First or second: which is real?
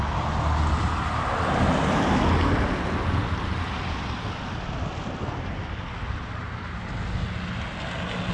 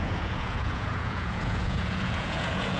first